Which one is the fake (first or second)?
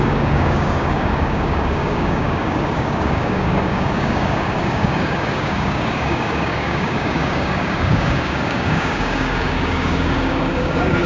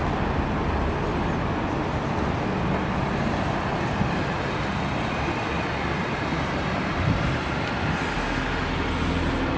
first